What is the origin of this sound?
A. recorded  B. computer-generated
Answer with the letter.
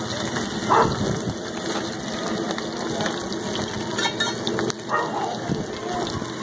A